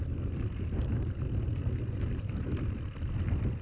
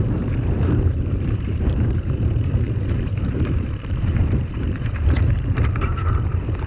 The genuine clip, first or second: first